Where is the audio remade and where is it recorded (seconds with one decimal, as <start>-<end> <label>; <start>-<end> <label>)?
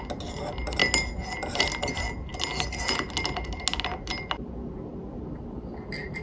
0.0-6.2 recorded